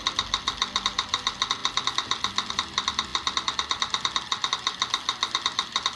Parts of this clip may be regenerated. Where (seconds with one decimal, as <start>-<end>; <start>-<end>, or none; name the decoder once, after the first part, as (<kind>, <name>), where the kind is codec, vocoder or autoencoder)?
none